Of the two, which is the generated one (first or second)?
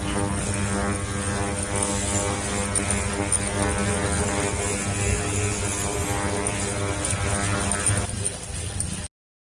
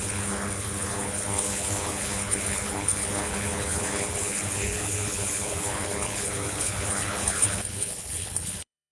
second